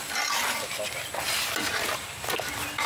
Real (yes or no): yes